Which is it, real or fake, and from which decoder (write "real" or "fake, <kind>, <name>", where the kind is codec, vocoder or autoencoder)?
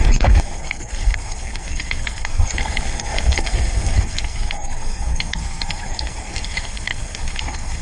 fake, codec, SNAC